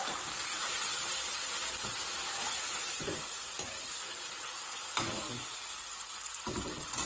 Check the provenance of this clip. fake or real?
real